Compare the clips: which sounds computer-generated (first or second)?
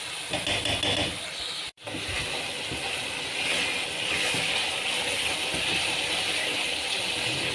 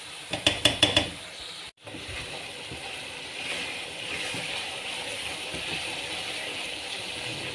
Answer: second